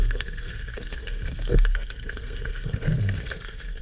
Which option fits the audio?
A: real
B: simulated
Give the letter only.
B